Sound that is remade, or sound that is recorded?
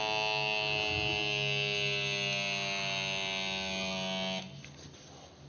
recorded